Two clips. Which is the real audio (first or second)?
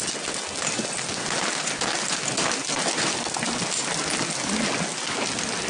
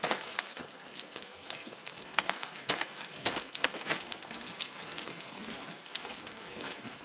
first